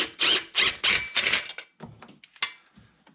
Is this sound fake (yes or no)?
no